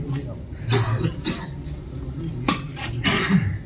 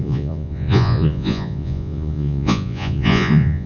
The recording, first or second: first